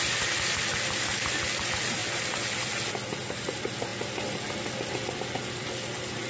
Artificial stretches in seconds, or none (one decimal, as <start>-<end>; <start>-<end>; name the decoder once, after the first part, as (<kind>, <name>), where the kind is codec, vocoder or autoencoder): none